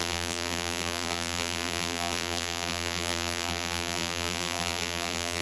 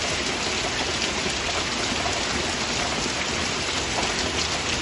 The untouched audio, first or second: second